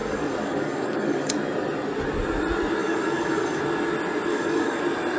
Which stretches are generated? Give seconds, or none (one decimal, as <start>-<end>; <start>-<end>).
0.0-1.3; 2.8-3.6; 4.3-4.8